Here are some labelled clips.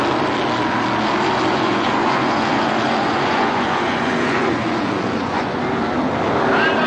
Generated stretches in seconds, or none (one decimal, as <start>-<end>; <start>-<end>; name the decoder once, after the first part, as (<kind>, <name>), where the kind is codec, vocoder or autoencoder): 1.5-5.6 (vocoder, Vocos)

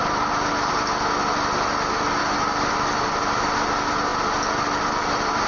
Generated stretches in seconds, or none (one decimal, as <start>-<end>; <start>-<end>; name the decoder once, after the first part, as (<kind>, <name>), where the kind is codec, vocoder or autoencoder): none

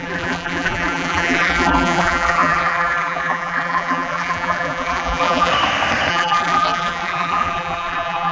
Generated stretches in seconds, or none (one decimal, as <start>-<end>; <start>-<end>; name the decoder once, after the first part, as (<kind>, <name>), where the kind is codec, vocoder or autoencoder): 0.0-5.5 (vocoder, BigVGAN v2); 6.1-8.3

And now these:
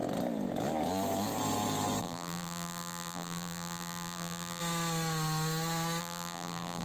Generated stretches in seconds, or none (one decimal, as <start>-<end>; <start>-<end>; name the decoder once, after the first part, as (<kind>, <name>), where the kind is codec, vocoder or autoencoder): 2.0-4.6 (vocoder, BigVGAN v2); 6.0-6.8

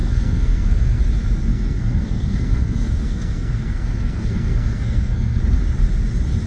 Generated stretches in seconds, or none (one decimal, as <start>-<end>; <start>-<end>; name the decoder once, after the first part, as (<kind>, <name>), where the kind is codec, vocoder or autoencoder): 0.0-1.0 (codec, SNAC); 1.5-5.4

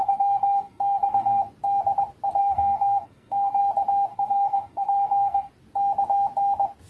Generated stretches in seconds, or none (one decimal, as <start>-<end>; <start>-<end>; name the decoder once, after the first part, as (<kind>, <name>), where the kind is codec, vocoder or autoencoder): 0.0-1.4 (codec, SNAC); 2.4-3.6; 4.1-5.5

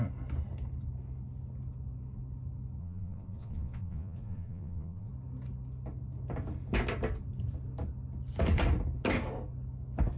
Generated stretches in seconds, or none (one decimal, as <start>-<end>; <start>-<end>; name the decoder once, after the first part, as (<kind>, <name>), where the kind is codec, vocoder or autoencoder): 2.8-5.1 (vocoder, Vocos)

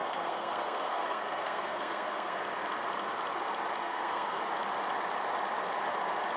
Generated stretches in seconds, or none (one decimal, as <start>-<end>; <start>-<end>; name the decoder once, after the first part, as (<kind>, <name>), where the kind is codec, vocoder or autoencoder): 0.0-2.4 (codec, SNAC); 3.8-4.4